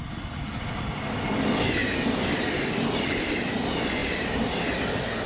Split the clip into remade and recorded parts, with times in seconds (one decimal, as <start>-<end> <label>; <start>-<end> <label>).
0.0-1.8 recorded; 1.8-2.4 remade; 2.4-4.0 recorded; 4.0-4.7 remade; 4.7-5.3 recorded